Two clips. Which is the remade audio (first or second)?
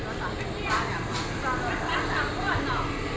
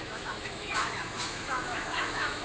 second